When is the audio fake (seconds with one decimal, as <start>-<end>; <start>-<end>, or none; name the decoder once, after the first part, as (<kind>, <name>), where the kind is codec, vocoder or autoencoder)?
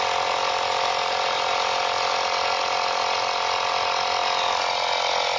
none